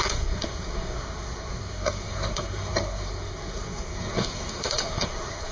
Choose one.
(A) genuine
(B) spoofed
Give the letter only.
B